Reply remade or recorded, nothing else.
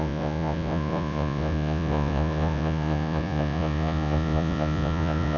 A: remade